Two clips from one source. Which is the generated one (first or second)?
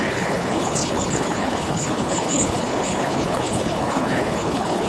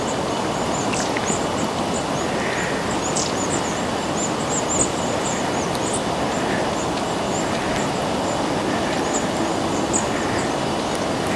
first